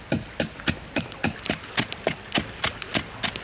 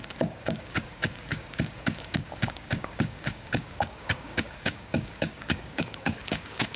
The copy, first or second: second